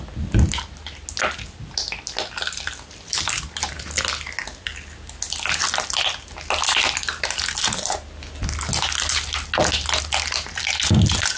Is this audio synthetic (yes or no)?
no